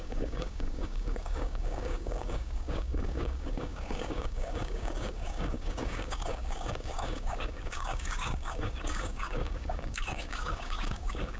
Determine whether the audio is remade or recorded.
remade